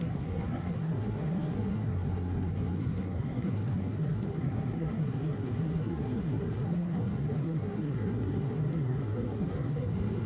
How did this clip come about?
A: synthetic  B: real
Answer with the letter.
A